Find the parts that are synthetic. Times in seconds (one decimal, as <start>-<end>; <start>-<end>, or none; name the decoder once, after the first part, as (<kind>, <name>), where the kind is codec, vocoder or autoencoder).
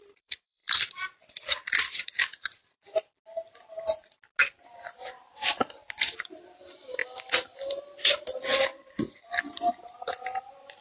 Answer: 0.0-2.6 (vocoder, BigVGAN v2); 4.7-10.8